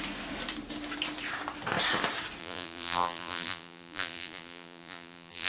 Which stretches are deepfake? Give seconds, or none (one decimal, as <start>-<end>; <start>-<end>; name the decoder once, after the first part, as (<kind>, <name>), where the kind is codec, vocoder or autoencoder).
2.4-5.5 (vocoder, BigVGAN v2)